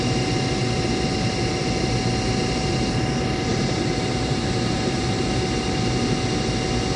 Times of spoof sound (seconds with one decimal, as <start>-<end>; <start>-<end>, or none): 3.5-5.2